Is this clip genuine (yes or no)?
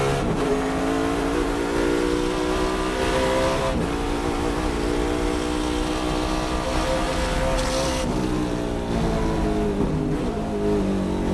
yes